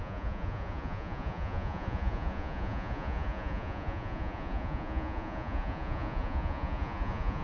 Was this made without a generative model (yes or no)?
no